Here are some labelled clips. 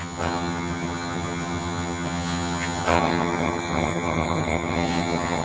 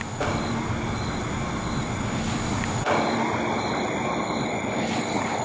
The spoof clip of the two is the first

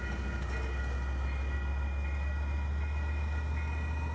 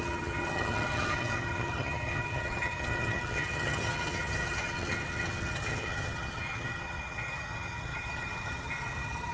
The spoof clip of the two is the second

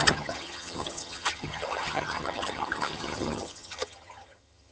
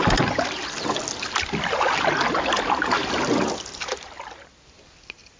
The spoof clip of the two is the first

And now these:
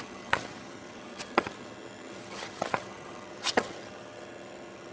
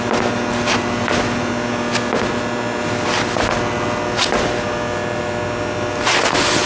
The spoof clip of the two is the first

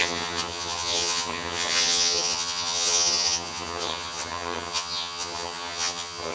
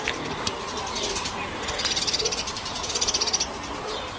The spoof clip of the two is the first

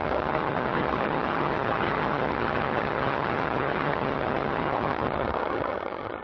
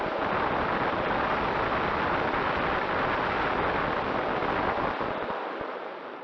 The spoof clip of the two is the first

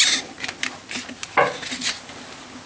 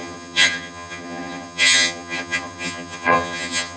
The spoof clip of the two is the second